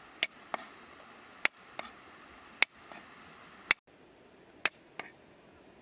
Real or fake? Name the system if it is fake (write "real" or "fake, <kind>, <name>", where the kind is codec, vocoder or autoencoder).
real